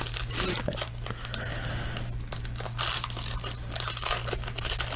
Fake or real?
real